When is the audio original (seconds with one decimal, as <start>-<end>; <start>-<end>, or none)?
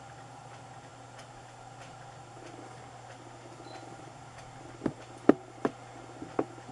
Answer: 0.0-6.7